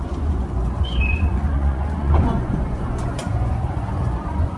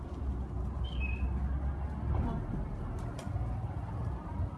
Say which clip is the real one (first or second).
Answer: second